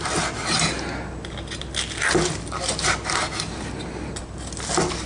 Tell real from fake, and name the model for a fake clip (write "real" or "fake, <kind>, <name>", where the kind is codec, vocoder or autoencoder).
real